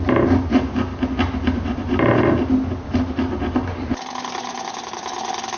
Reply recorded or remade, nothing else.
recorded